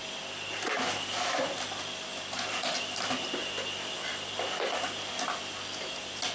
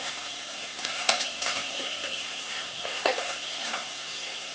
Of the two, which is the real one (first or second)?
first